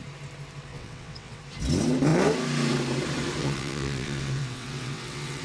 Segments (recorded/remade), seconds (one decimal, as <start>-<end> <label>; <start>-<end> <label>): 0.0-0.7 recorded; 0.7-1.4 remade; 1.4-3.4 recorded; 3.4-5.4 remade